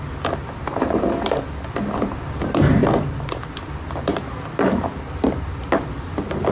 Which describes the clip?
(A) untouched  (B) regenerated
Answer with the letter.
A